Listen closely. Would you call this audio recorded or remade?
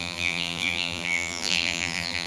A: remade